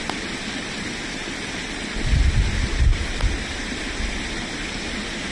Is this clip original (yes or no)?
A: yes